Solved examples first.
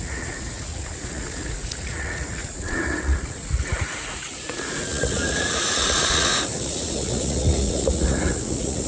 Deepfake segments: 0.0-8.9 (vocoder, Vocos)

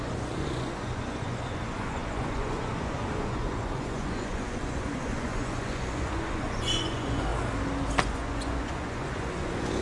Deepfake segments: 0.0-7.3 (vocoder, Vocos); 8.0-9.8

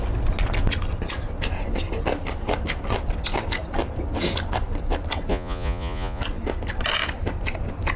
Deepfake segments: 5.3-6.2 (vocoder, Vocos)

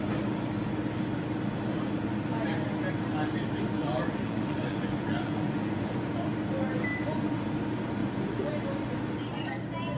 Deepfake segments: 3.8-6.1 (vocoder, Vocos); 8.0-8.5

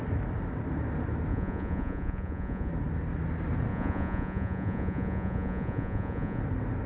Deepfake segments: 1.3-2.7 (vocoder, Vocos); 3.7-6.4

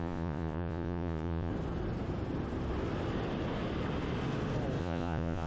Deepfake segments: 0.0-1.5 (vocoder, Vocos); 4.8-5.5

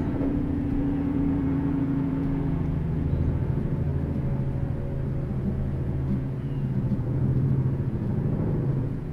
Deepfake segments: 0.0-3.9 (vocoder, Vocos); 5.3-9.1

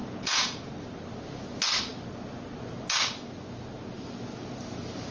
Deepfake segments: 0.0-0.7 (vocoder, Vocos)